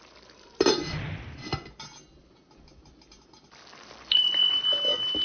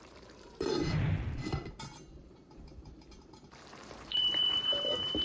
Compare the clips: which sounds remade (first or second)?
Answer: second